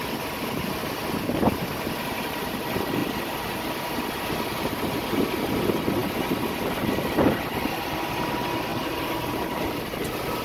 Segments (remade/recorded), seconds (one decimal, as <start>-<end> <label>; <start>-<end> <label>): 0.0-8.7 recorded; 8.7-9.6 remade; 9.6-10.4 recorded